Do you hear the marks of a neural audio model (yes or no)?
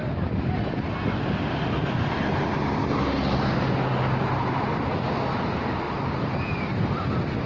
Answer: no